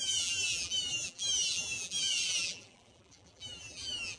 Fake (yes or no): yes